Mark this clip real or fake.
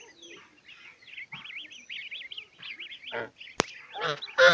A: real